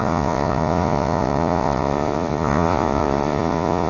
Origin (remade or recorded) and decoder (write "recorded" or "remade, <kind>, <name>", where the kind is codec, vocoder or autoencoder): remade, vocoder, Vocos